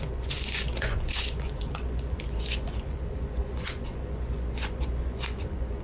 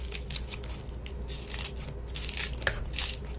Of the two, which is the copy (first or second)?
first